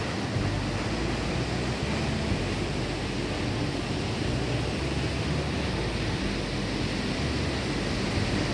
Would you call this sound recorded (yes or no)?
yes